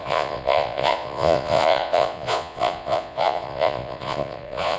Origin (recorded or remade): remade